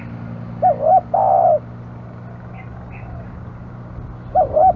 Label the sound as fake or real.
real